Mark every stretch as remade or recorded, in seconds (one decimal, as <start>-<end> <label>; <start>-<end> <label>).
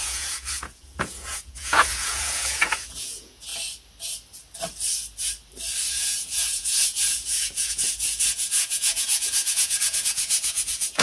0.0-3.5 remade; 3.5-5.9 recorded; 5.9-11.0 remade